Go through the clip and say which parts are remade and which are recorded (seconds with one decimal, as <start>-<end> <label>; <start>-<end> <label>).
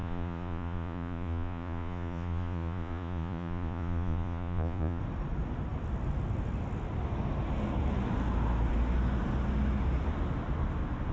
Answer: 0.0-5.0 remade; 5.0-11.1 recorded